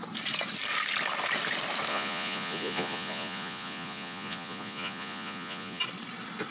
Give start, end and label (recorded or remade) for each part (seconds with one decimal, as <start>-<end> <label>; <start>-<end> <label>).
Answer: 0.0-1.9 recorded; 1.9-5.8 remade; 5.8-6.5 recorded